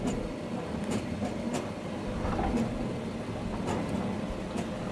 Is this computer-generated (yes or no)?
no